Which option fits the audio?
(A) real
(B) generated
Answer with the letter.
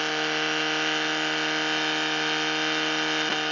A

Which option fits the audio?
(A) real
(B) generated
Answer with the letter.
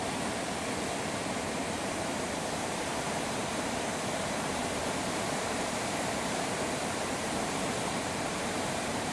B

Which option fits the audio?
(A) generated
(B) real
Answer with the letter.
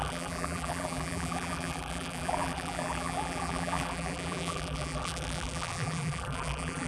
A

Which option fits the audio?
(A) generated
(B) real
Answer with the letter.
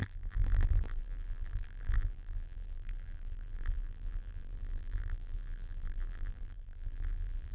A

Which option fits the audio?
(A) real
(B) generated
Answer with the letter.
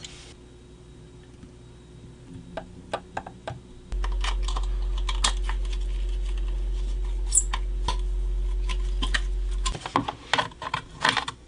A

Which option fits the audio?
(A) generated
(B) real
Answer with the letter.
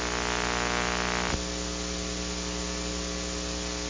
B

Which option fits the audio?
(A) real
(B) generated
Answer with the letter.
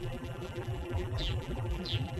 B